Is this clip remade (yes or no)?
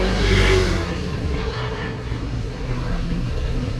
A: yes